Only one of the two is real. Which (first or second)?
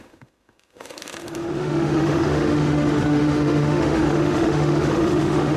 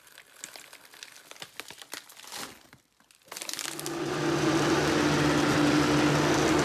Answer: second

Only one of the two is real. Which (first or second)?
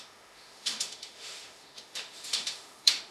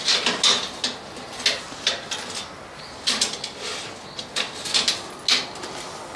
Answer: second